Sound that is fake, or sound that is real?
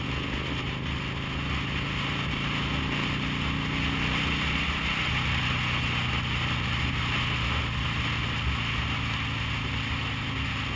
real